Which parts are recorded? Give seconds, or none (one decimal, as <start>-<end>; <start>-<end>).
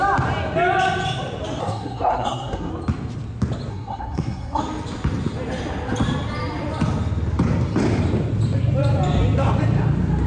0.0-1.6; 2.7-3.7; 4.6-10.3